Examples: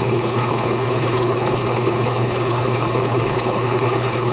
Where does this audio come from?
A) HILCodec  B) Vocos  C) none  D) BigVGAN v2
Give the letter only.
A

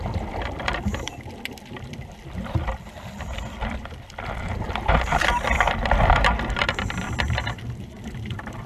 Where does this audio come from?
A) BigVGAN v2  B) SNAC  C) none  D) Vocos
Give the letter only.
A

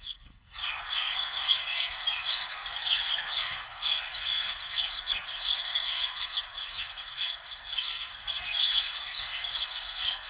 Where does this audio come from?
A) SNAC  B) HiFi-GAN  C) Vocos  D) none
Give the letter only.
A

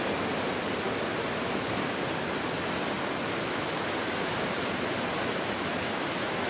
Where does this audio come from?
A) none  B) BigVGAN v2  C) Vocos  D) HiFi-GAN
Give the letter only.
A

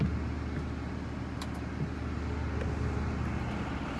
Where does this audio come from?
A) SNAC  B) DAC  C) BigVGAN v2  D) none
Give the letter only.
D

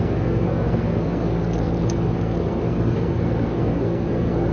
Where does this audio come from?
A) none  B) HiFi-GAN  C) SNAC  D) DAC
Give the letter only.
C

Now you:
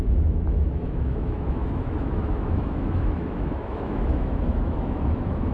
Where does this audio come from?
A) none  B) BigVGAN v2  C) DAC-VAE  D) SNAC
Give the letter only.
C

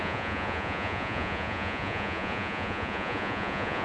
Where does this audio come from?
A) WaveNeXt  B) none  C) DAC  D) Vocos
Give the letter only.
D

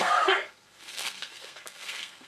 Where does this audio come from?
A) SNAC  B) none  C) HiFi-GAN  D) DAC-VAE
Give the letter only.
A